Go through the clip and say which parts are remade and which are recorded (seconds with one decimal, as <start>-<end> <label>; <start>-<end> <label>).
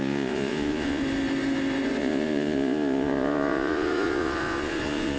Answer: 0.0-1.0 remade; 1.0-2.0 recorded; 2.0-5.2 remade